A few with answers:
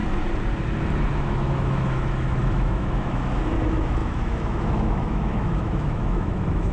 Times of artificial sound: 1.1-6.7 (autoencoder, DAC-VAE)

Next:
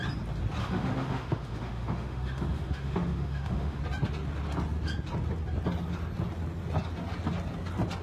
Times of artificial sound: 0.6-3.8 (autoencoder, DAC-VAE)

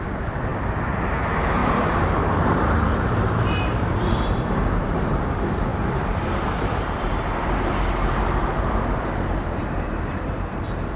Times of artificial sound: 0.0-11.0 (vocoder, BigVGAN v2)

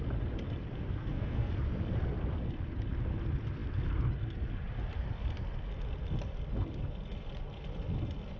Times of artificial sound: 1.0-1.5 (codec, SNAC)